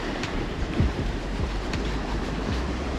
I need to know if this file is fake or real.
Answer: fake